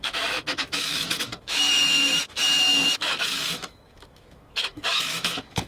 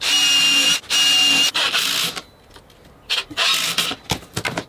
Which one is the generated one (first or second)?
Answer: first